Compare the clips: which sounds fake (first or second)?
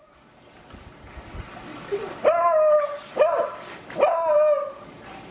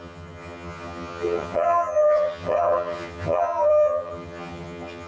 second